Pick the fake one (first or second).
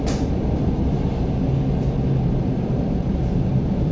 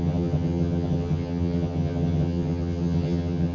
second